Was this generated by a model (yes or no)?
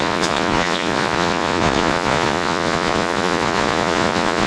yes